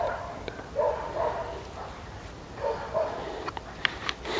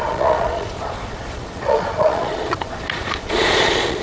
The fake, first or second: second